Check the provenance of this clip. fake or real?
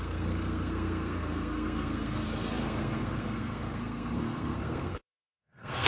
fake